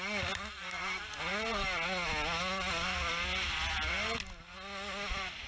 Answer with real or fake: real